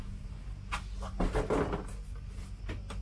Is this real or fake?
real